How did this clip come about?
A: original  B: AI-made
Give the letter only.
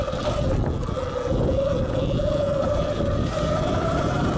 A